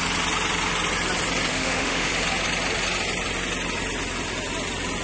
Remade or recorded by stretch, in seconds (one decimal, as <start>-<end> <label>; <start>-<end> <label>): 0.0-1.5 recorded; 1.5-2.1 remade; 2.1-5.0 recorded